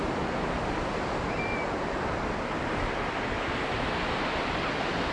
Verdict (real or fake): real